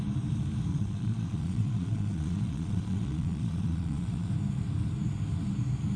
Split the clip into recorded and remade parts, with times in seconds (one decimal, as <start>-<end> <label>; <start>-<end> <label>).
0.0-0.7 recorded; 0.7-4.3 remade; 4.3-6.0 recorded